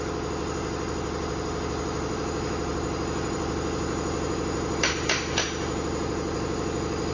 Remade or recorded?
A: recorded